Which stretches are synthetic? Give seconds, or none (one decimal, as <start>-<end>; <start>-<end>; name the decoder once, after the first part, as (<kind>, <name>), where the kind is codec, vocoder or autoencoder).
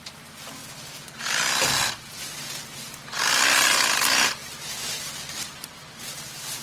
4.4-6.0 (vocoder, BigVGAN v2)